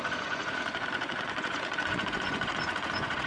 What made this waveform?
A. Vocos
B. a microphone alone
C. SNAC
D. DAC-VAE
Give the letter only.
A